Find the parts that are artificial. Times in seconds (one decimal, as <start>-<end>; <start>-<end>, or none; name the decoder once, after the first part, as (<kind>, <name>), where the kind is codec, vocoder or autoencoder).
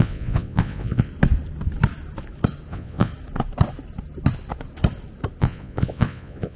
0.0-1.1 (vocoder, Vocos); 2.7-3.1; 5.4-6.6